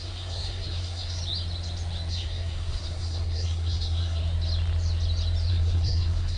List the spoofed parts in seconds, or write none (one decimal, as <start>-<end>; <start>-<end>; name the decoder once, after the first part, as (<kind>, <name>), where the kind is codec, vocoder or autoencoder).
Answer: 0.0-1.2 (codec, SNAC); 2.1-4.2; 5.5-6.4

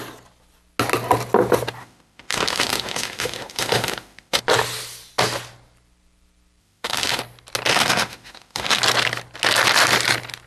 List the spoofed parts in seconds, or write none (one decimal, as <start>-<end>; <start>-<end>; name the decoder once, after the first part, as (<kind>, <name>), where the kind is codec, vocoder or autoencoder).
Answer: 1.8-4.4 (autoencoder, DAC-VAE); 6.6-7.2; 7.7-8.8

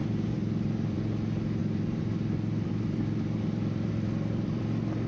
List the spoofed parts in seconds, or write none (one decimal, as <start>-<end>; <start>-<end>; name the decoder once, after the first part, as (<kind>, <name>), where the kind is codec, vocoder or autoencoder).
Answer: 0.0-1.0 (vocoder, BigVGAN v2); 1.6-4.6

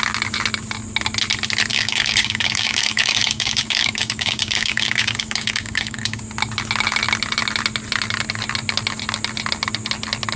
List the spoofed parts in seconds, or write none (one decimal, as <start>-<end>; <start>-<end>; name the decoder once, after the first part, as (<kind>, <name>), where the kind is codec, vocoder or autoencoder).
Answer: 1.7-6.2 (codec, DAC)